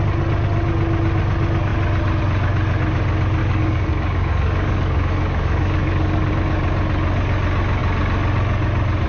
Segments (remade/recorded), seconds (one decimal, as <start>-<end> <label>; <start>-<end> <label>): 0.0-3.4 recorded; 3.4-6.3 remade; 6.3-9.1 recorded